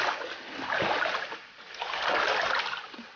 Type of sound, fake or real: real